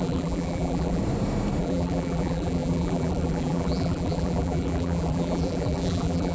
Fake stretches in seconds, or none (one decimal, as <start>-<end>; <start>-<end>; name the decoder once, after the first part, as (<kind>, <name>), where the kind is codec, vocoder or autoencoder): 0.0-1.0 (vocoder, BigVGAN v2); 1.6-6.3